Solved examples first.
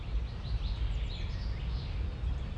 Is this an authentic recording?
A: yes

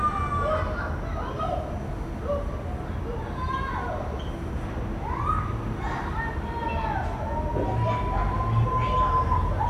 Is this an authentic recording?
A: yes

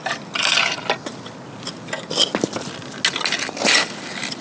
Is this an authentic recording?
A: yes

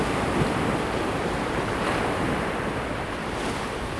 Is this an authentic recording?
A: no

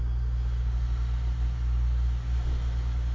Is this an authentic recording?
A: yes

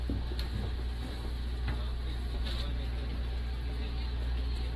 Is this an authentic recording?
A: yes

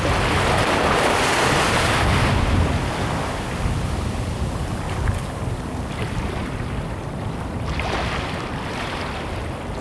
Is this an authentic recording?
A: yes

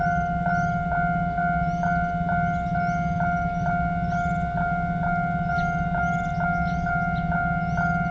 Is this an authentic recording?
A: yes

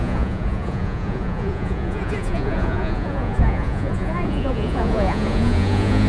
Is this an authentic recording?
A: no